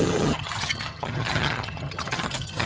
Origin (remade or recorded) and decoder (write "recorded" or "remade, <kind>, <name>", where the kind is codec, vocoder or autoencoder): remade, vocoder, HiFi-GAN